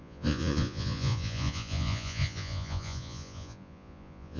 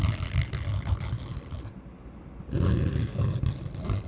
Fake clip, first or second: first